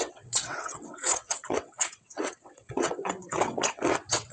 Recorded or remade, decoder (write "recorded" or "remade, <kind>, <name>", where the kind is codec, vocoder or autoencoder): remade, vocoder, WaveNeXt